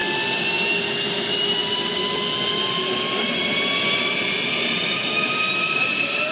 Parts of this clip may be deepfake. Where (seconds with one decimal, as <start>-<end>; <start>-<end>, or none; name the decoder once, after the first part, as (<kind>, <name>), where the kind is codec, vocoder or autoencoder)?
none